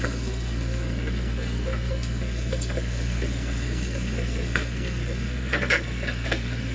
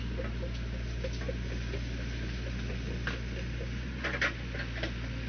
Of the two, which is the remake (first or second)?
first